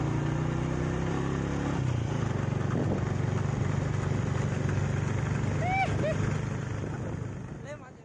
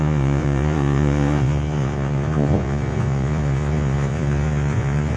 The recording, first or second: first